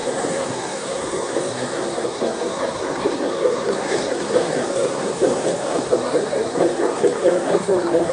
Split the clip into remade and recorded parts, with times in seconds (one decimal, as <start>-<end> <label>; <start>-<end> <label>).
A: 0.0-8.1 remade